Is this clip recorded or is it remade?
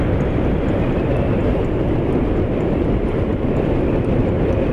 remade